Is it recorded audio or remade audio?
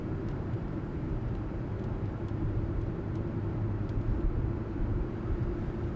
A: remade